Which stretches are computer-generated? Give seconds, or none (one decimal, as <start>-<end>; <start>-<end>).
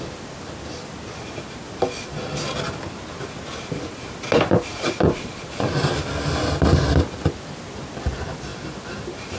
4.7-5.9; 8.5-9.4